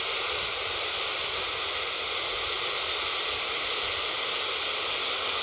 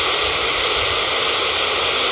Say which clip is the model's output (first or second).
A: first